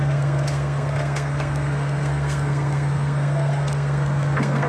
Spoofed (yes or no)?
yes